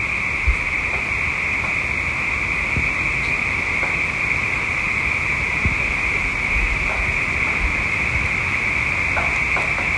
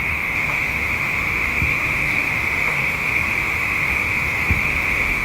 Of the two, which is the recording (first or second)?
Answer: first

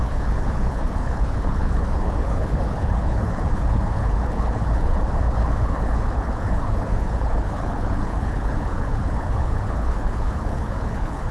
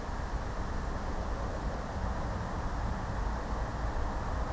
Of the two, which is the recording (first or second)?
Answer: second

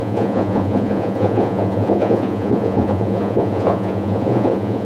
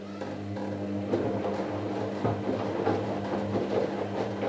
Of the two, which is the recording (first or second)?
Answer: second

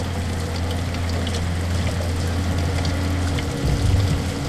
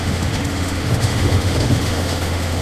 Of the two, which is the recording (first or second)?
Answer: first